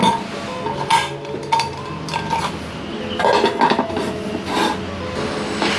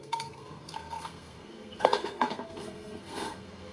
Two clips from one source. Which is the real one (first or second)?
first